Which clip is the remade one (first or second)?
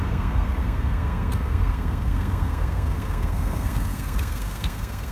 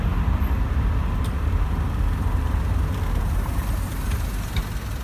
first